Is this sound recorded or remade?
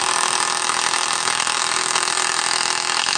remade